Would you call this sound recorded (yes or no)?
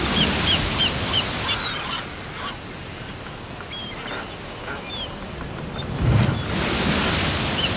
yes